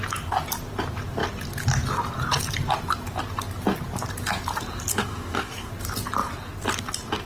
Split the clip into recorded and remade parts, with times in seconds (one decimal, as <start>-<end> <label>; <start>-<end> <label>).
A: 0.0-4.9 recorded; 4.9-5.7 remade; 5.7-7.3 recorded